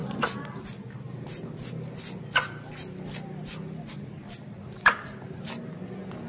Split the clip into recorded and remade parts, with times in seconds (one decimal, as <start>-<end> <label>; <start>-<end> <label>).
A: 0.0-6.3 recorded